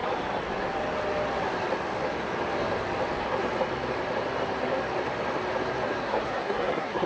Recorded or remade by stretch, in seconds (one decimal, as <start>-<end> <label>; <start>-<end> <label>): 0.0-6.0 recorded; 6.0-7.1 remade